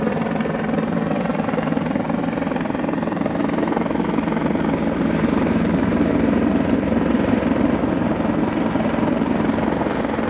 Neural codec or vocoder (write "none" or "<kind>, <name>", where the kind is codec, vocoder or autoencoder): vocoder, BigVGAN v2